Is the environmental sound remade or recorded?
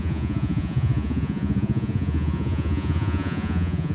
remade